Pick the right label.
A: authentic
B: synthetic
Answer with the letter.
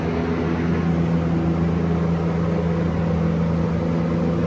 A